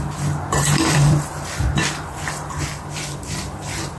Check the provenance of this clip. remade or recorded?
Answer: remade